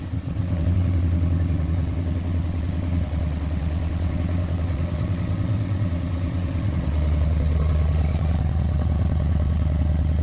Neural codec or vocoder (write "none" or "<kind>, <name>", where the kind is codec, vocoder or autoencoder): vocoder, WaveNeXt